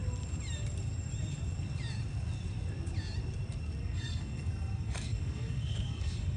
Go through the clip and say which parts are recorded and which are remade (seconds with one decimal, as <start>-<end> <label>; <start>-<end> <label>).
0.0-3.8 recorded; 3.8-6.4 remade